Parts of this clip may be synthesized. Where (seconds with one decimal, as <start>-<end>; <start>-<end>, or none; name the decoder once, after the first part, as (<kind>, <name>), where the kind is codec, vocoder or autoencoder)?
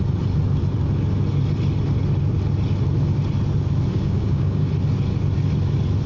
3.9-4.7 (codec, DAC)